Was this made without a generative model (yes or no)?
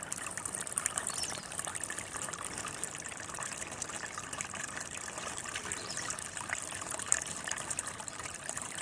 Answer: no